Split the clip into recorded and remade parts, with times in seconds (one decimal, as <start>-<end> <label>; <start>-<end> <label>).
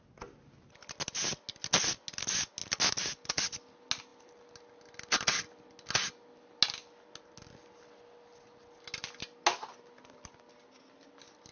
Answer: 0.0-11.5 recorded